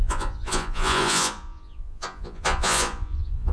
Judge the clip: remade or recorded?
remade